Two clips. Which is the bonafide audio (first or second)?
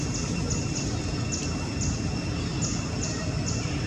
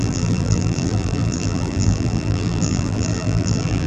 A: first